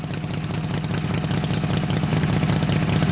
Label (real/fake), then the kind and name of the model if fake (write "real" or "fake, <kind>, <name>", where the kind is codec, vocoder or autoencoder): real